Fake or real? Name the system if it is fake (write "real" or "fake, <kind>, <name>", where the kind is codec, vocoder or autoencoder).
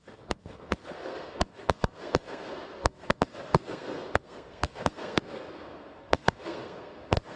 fake, codec, SNAC